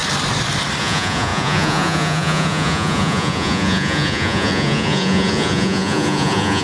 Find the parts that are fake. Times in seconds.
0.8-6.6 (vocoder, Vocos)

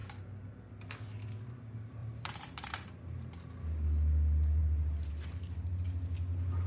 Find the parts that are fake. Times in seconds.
2.0-3.0 (vocoder, BigVGAN v2)

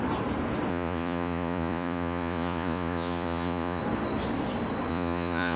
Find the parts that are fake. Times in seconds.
0.7-3.8 (vocoder, Vocos); 4.9-5.6

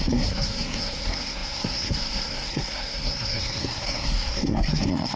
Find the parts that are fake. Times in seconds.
0.0-5.2 (codec, SNAC)